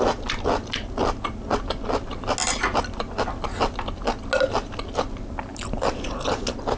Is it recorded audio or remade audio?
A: recorded